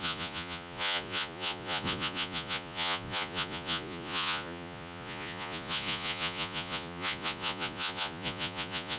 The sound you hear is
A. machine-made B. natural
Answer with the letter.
A